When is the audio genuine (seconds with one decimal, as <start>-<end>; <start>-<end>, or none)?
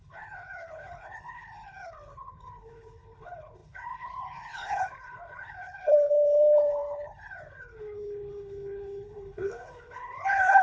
none